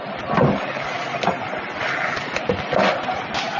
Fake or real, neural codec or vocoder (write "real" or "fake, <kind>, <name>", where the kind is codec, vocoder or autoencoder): real